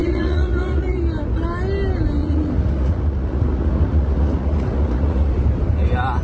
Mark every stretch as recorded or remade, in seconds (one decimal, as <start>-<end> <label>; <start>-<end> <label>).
0.0-1.0 remade; 1.0-2.2 recorded; 2.2-5.3 remade; 5.3-6.2 recorded